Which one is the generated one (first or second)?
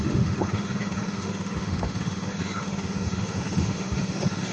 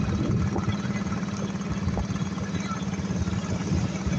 first